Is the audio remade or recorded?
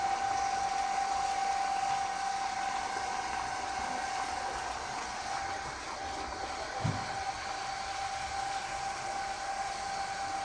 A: recorded